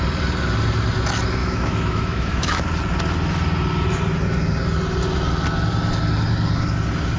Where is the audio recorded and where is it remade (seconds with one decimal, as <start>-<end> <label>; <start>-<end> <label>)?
0.0-1.4 recorded; 1.4-2.6 remade; 2.6-7.2 recorded